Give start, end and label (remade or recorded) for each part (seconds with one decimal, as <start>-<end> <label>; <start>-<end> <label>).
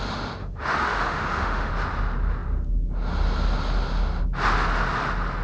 0.0-0.4 recorded; 0.4-1.7 remade; 1.7-5.4 recorded